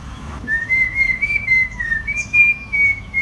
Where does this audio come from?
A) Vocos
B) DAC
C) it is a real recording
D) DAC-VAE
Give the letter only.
D